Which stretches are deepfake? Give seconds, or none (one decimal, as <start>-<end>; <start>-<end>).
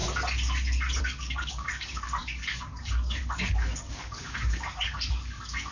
1.0-5.7